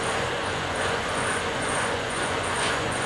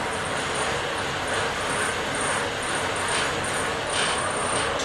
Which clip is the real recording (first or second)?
second